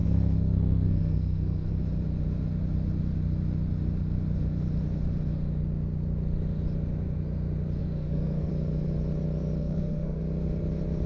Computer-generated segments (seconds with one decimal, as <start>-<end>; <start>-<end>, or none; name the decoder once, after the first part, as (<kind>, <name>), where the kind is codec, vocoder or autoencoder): 0.0-1.7 (codec, SNAC); 7.8-8.5; 9.6-10.2